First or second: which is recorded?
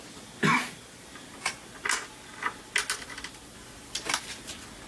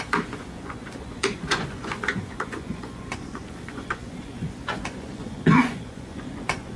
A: first